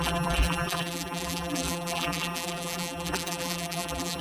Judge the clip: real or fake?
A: fake